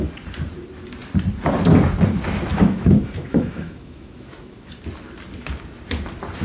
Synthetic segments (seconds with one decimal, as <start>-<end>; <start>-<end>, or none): 2.5-4.7